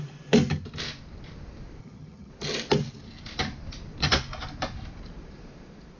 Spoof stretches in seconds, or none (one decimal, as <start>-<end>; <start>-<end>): 1.8-2.3